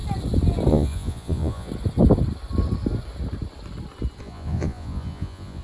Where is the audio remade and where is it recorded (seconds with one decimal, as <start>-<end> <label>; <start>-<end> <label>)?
0.0-0.7 recorded; 0.7-1.7 remade; 1.7-4.2 recorded; 4.2-5.6 remade